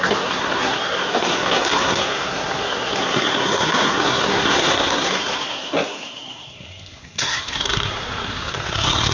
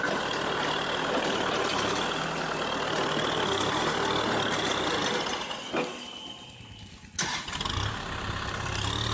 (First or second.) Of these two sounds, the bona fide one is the second